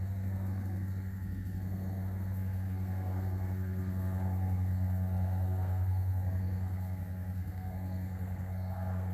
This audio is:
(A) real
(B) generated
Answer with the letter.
B